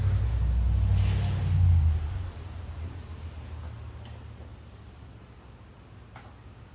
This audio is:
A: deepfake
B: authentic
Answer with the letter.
B